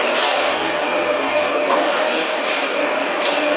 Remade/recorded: remade